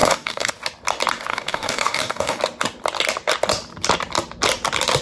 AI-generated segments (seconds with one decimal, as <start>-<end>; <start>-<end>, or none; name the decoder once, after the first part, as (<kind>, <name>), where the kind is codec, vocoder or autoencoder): 0.0-0.5 (codec, DAC); 1.3-2.4